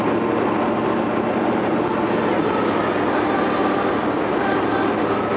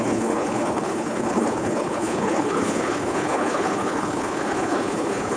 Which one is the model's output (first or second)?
second